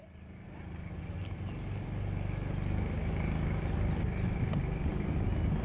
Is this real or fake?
real